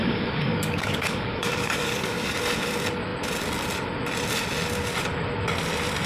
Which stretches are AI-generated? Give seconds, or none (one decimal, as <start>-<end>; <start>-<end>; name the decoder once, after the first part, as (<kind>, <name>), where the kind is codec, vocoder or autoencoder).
0.0-2.3 (codec, DAC)